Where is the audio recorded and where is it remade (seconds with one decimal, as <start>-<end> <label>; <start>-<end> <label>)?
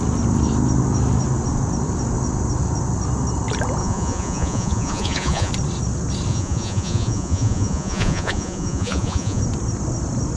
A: 0.0-3.8 recorded; 3.8-5.5 remade; 5.5-6.3 recorded; 6.3-9.4 remade; 9.4-10.4 recorded